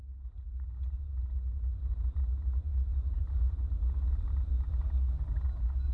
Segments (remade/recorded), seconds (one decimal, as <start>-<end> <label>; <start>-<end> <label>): 0.0-5.9 recorded